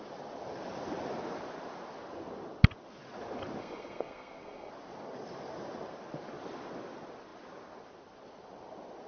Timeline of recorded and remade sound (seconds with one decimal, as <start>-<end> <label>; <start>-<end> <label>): 0.0-3.6 recorded; 3.6-4.7 remade; 4.7-9.1 recorded